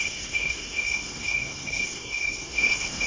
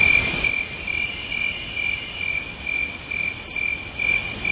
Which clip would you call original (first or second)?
second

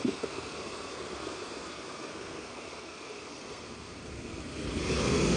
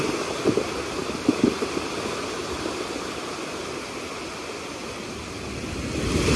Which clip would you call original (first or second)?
second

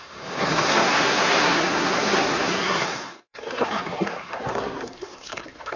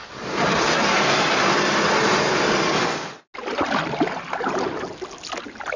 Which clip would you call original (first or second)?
second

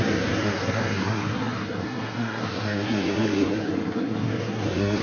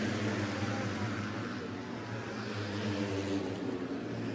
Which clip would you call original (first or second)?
second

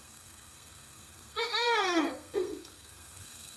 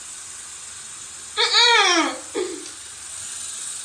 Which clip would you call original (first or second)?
second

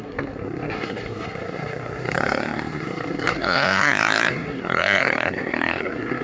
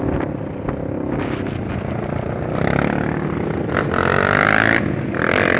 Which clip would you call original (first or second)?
second